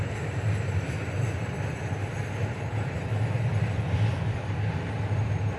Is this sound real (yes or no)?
yes